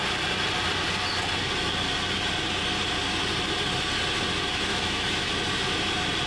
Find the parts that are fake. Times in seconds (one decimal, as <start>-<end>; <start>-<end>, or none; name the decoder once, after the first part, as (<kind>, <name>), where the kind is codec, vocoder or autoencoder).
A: 4.7-5.3 (autoencoder, DAC-VAE)